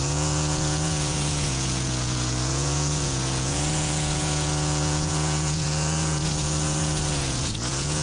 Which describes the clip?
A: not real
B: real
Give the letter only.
A